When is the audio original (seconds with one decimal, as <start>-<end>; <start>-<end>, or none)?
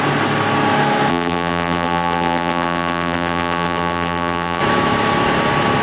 0.0-1.1; 4.6-5.8